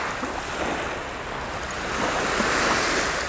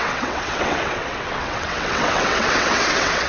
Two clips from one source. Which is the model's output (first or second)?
second